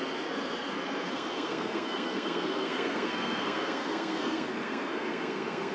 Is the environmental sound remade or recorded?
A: remade